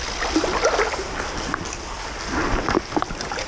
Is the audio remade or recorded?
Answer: recorded